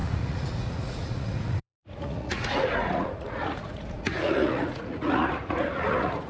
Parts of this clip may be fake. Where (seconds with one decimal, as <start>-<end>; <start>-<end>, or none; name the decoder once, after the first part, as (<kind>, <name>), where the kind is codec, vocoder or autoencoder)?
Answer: 0.0-6.3 (vocoder, Vocos)